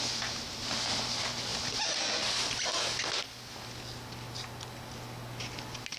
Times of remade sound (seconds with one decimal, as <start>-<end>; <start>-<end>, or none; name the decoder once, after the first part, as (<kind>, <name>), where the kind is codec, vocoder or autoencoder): none